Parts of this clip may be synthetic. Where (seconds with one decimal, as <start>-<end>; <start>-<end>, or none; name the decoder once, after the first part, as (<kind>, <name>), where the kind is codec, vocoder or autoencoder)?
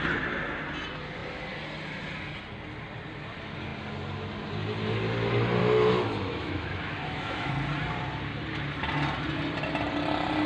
5.6-7.5 (autoencoder, DAC-VAE)